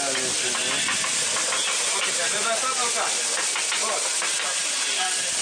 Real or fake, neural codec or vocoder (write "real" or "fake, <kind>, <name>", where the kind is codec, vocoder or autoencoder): real